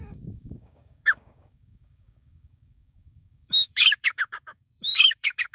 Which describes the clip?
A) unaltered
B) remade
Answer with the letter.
B